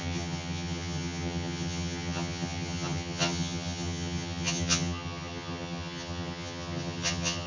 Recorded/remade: remade